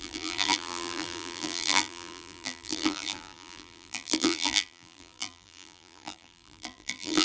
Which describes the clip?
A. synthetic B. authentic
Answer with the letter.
A